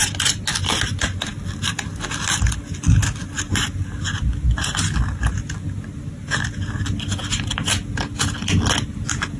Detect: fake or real real